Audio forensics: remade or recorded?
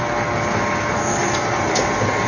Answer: recorded